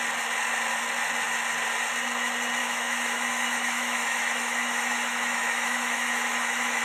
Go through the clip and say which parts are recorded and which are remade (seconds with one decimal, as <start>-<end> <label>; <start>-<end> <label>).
0.0-2.6 recorded; 2.6-6.8 remade